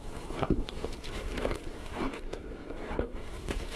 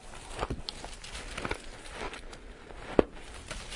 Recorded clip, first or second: second